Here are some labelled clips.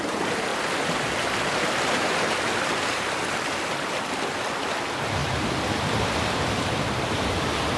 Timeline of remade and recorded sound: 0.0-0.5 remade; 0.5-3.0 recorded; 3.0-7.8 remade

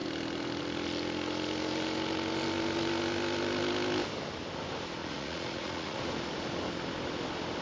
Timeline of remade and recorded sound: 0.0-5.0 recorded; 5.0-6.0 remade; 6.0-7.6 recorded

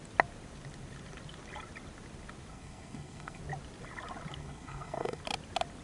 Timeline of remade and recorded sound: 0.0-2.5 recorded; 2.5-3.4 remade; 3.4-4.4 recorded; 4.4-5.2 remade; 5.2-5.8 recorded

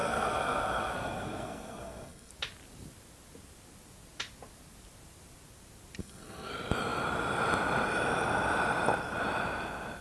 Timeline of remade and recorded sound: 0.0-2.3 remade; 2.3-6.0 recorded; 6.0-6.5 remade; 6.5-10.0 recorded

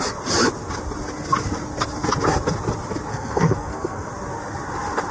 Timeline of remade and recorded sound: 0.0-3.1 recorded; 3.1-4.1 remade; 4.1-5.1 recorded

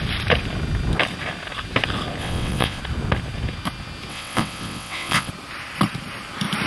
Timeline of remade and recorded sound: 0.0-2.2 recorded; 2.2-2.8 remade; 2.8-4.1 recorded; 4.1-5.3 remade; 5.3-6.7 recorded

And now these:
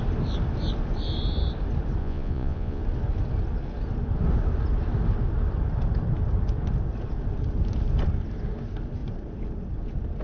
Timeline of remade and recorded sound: 0.0-2.0 recorded; 2.0-2.8 remade; 2.8-10.2 recorded